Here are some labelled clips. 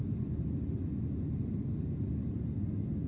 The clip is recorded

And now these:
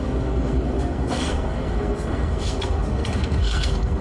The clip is remade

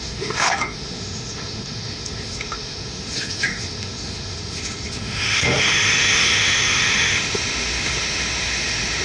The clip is remade